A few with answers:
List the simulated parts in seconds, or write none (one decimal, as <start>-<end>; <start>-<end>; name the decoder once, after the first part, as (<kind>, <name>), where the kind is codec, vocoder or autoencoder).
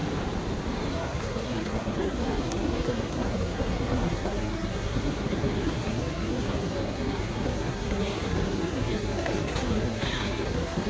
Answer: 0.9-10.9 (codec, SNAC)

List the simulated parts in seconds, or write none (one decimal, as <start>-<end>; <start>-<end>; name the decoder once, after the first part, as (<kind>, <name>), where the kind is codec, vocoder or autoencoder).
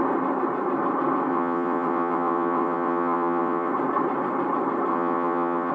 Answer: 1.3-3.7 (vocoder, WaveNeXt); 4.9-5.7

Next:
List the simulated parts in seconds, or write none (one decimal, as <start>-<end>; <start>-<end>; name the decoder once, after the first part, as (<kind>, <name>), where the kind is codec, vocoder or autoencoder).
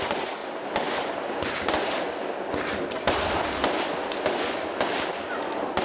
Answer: none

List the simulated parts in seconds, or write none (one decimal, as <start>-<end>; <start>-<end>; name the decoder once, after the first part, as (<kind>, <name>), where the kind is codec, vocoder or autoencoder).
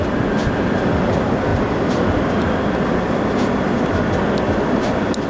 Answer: none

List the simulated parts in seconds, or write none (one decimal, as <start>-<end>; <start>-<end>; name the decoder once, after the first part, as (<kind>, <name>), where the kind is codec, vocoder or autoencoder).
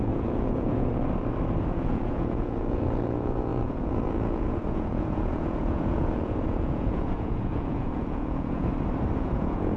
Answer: 0.0-0.9 (vocoder, Vocos); 1.7-8.7; 9.2-9.8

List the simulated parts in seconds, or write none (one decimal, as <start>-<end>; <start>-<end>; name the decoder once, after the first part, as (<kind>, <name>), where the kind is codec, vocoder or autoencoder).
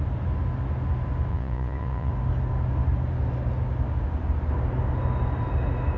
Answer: 1.3-2.1 (vocoder, Vocos)